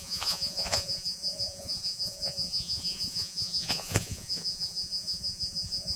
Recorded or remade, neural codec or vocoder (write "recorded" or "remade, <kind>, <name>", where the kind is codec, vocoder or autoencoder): remade, vocoder, Vocos